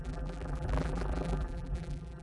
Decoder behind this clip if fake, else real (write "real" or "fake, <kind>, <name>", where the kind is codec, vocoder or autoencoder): fake, vocoder, BigVGAN v2